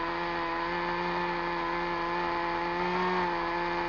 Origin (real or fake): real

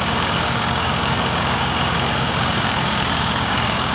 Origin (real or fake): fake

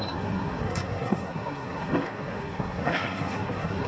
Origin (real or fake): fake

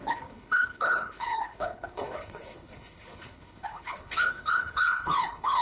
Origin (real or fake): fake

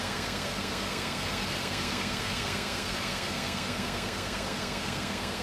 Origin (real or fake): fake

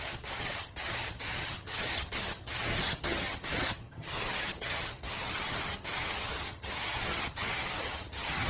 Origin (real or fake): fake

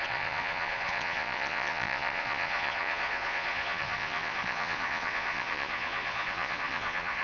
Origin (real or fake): fake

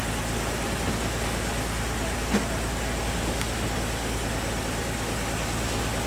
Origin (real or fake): real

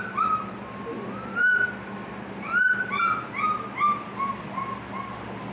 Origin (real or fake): real